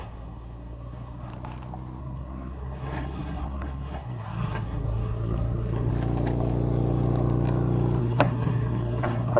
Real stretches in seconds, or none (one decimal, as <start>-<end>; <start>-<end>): 1.3-2.0; 5.9-8.0